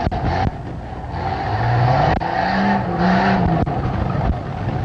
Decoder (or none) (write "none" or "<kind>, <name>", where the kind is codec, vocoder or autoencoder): none